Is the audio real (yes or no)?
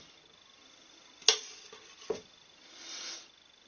yes